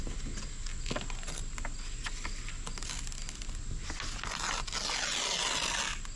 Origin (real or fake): real